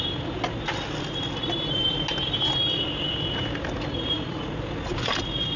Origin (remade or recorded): recorded